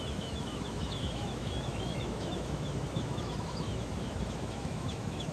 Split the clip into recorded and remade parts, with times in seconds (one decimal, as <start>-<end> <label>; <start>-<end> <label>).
0.0-5.3 remade